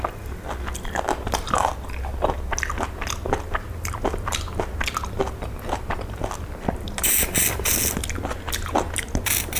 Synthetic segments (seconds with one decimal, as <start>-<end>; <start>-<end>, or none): none